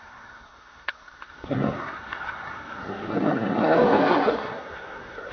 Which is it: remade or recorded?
remade